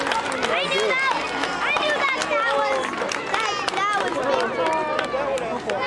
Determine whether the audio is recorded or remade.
recorded